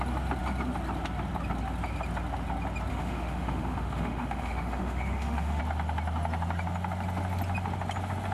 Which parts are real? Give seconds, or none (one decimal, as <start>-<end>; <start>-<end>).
0.0-2.9; 5.6-8.3